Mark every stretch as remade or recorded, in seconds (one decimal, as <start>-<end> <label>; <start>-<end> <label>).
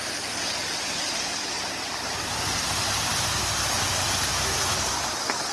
0.0-5.5 recorded